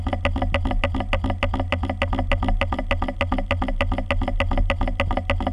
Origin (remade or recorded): recorded